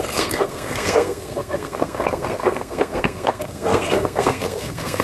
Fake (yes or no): yes